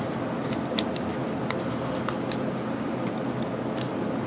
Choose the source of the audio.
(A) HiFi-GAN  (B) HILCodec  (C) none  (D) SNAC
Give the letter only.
C